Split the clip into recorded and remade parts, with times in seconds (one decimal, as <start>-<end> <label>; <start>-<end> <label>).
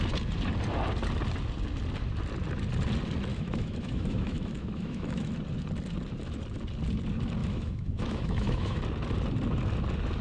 0.0-3.3 recorded; 3.3-5.3 remade; 5.3-7.4 recorded; 7.4-8.8 remade; 8.8-10.2 recorded